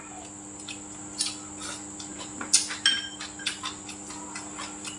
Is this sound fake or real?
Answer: real